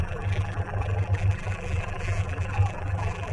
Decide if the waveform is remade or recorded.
remade